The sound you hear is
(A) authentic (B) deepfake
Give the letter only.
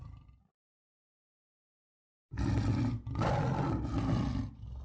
A